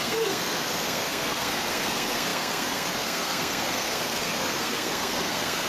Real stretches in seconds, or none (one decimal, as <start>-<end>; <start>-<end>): none